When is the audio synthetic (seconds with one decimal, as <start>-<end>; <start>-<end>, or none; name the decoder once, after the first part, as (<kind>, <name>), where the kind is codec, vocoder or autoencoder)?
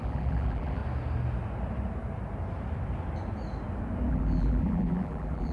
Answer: 0.0-0.8 (vocoder, BigVGAN v2); 4.1-5.5